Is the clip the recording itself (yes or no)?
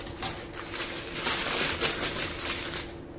yes